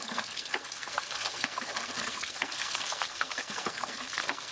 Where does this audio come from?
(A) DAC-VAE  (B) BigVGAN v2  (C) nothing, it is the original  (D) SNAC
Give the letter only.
D